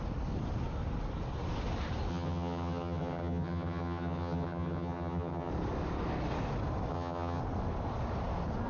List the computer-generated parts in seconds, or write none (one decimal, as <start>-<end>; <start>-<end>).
2.1-5.5; 6.9-7.4